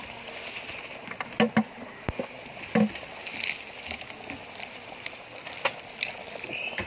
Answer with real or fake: real